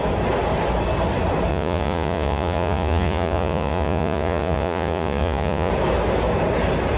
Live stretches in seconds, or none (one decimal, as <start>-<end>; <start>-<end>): 0.0-1.5; 5.7-7.0